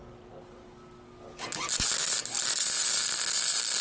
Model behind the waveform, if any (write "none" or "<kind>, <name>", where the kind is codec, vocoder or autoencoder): none